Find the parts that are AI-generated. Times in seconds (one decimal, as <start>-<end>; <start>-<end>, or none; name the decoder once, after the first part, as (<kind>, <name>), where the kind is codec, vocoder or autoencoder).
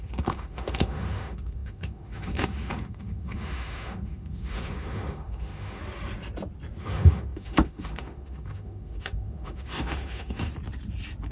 0.0-5.8 (autoencoder, DAC-VAE); 6.8-10.5